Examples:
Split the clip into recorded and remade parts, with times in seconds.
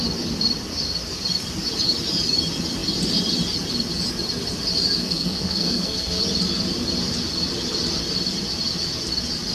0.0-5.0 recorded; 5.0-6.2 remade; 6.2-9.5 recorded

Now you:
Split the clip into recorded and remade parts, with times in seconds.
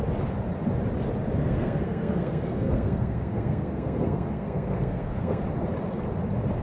0.0-1.4 recorded; 1.4-5.4 remade; 5.4-6.6 recorded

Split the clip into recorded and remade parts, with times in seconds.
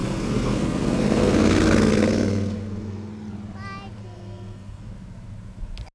0.0-3.1 remade; 3.1-4.0 recorded; 4.0-4.9 remade; 4.9-5.9 recorded